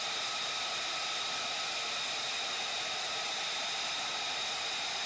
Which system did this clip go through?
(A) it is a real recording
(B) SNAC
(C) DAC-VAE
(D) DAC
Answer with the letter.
A